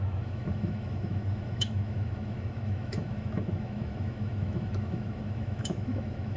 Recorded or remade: remade